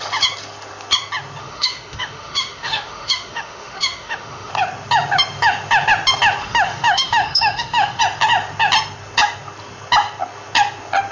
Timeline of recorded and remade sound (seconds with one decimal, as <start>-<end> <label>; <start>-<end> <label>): 0.0-1.4 recorded; 1.4-4.5 remade; 4.5-6.4 recorded; 6.4-8.0 remade; 8.0-11.1 recorded